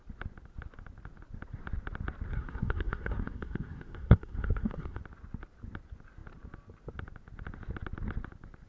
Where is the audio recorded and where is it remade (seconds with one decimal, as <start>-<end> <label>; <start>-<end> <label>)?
0.0-2.3 recorded; 2.3-5.0 remade; 5.0-8.7 recorded